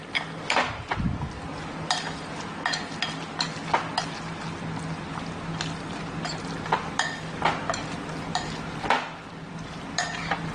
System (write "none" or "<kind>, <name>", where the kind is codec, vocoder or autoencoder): none